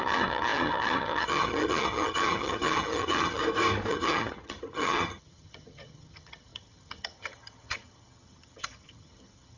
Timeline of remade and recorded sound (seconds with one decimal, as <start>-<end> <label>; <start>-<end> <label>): 0.0-3.4 remade; 3.4-3.9 recorded; 3.9-9.6 remade